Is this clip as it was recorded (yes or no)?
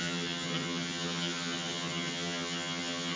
no